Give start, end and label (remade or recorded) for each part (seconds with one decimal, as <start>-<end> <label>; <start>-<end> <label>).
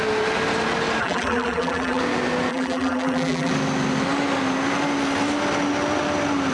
0.0-1.0 recorded; 1.0-2.0 remade; 2.0-2.5 recorded; 2.5-3.5 remade; 3.5-6.5 recorded